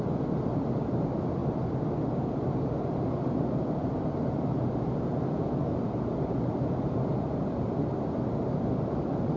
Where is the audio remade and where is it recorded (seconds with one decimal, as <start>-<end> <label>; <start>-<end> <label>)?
0.0-1.4 remade; 1.4-2.4 recorded; 2.4-9.4 remade